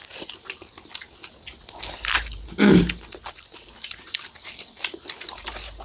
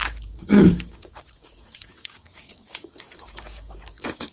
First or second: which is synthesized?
second